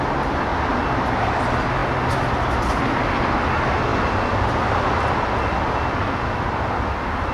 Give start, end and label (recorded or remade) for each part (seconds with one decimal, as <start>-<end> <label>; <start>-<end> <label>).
0.0-7.3 recorded

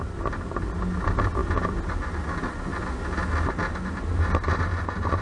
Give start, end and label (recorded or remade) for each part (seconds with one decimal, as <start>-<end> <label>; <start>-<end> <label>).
0.0-5.2 recorded

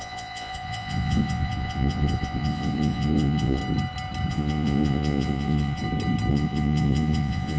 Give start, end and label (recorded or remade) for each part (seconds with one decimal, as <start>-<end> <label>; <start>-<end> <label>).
0.0-3.6 remade; 3.6-4.3 recorded; 4.3-5.8 remade; 5.8-6.3 recorded; 6.3-7.6 remade